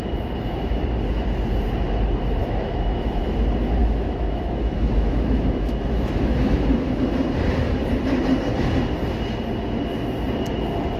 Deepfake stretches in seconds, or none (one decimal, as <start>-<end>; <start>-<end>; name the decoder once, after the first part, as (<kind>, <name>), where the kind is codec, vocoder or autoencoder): 2.4-3.2 (autoencoder, DAC-VAE); 3.8-6.9